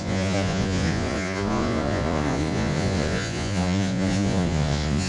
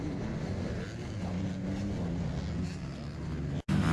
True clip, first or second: second